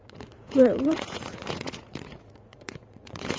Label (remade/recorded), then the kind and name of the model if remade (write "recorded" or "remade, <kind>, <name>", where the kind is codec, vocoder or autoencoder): remade, vocoder, Vocos